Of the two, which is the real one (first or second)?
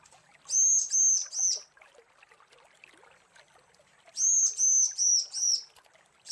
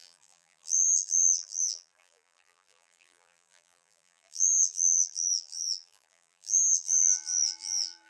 first